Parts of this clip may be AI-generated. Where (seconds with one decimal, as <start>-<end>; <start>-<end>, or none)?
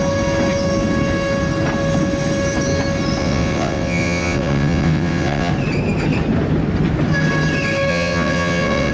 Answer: 3.2-5.5; 7.9-8.9